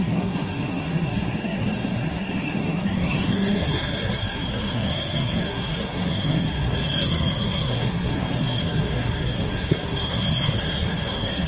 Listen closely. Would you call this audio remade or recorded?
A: remade